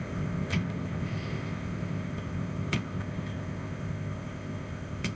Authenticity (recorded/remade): remade